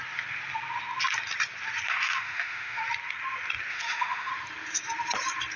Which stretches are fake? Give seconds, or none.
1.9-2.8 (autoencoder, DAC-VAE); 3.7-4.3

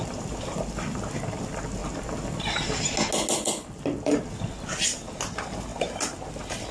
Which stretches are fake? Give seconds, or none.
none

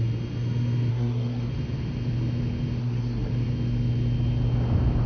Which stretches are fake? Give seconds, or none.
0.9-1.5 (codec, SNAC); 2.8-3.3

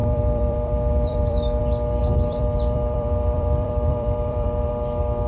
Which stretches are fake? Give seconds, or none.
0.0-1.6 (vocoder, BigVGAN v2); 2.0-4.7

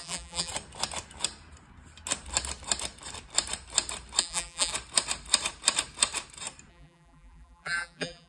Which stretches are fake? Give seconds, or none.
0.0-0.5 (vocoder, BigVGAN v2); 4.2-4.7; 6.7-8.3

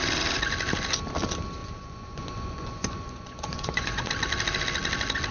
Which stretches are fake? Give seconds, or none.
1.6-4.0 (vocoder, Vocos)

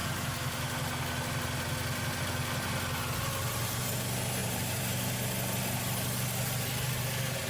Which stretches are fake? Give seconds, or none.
4.4-5.2 (vocoder, BigVGAN v2)